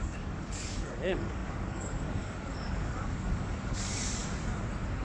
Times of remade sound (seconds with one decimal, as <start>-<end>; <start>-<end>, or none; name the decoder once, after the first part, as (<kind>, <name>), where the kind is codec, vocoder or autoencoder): 0.0-4.2 (codec, DAC)